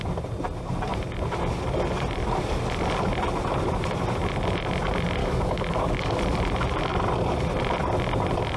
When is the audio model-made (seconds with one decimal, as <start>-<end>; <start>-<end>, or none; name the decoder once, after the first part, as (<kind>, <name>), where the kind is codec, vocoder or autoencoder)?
5.2-6.2 (codec, DAC)